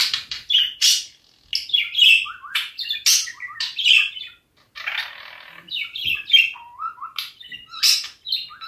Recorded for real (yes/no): yes